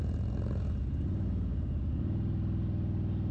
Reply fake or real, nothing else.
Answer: real